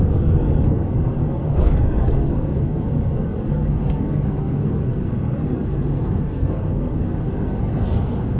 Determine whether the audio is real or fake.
fake